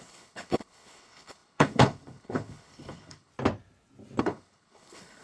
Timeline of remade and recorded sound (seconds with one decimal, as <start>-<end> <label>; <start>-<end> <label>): 0.0-3.3 remade; 3.3-4.2 recorded; 4.2-5.2 remade